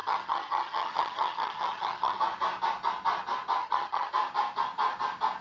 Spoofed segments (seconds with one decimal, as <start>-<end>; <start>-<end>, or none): 0.0-2.2; 3.6-4.1